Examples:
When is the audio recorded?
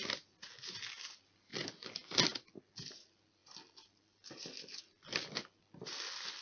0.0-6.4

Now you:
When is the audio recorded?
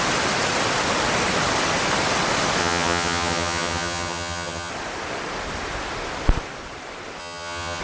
0.0-2.6; 4.7-7.2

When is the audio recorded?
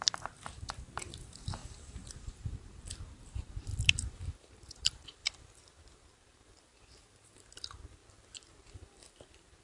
8.0-8.7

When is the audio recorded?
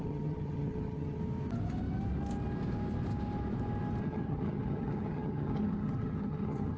1.2-4.0